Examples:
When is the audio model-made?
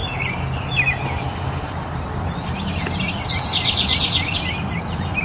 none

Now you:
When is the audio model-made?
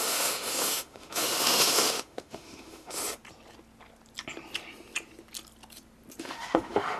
0.0-3.0 (autoencoder, DAC-VAE); 6.2-7.0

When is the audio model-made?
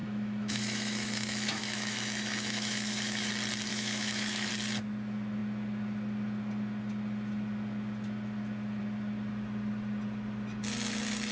0.0-3.3 (autoencoder, DAC-VAE); 3.7-4.5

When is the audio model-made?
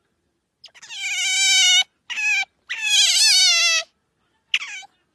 2.8-3.5 (autoencoder, DAC-VAE)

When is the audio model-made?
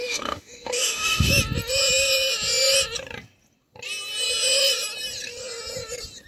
0.0-1.3 (autoencoder, DAC-VAE)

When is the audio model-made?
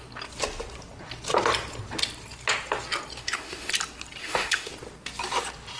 3.2-3.7 (autoencoder, DAC-VAE); 4.2-4.7